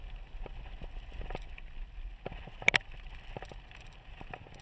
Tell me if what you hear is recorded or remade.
recorded